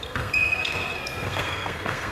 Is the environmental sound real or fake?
fake